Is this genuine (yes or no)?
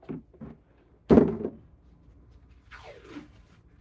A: yes